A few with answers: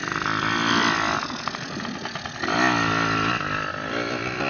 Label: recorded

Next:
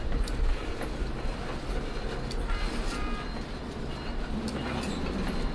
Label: recorded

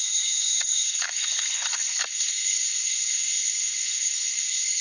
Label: remade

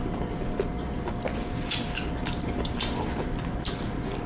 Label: remade